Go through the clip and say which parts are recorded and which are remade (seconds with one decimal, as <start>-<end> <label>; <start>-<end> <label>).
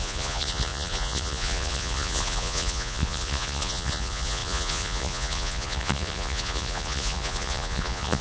0.0-8.2 remade